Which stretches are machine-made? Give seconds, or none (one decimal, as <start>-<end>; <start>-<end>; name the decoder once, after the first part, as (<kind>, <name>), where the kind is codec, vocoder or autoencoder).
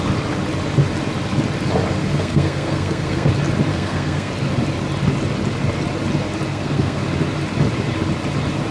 2.0-3.3 (codec, SNAC); 3.7-4.3; 6.5-7.0